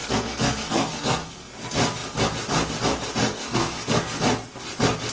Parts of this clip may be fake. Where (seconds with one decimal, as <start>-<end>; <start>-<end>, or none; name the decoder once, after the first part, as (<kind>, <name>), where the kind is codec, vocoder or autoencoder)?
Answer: 0.0-1.5 (codec, SNAC); 3.2-4.2